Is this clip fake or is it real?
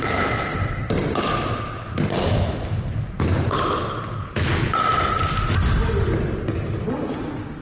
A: real